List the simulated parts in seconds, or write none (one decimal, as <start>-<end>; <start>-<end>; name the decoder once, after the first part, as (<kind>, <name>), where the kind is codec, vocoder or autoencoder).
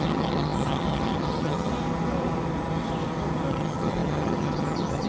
0.0-1.7 (vocoder, HiFi-GAN); 3.5-5.1